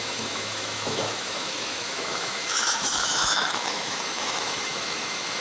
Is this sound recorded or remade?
remade